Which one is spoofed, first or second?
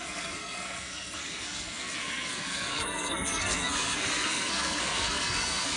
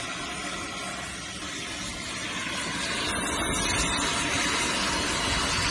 first